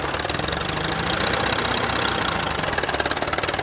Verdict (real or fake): real